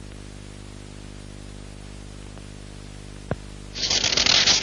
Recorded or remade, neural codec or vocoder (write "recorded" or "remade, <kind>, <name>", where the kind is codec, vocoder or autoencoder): recorded